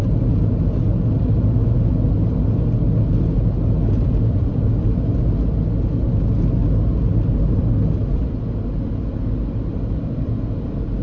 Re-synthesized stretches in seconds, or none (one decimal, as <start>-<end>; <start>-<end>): none